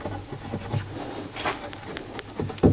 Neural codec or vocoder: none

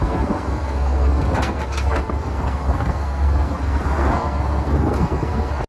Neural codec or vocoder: codec, SNAC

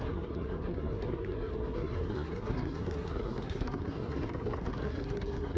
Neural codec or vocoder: codec, SNAC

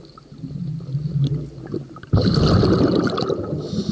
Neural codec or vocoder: none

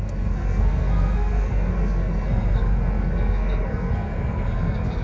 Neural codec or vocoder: codec, SNAC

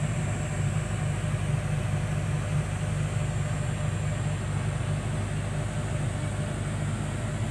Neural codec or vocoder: none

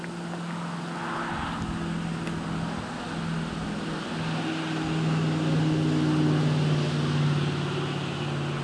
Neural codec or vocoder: none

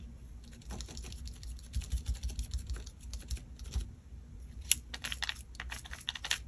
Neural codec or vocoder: none